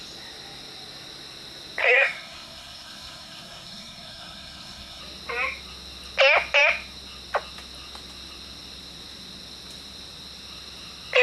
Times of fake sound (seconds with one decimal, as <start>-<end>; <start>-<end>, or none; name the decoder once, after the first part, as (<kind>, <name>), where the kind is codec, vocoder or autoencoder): 1.8-5.0 (codec, SNAC)